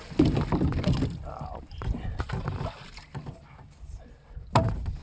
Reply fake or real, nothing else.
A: real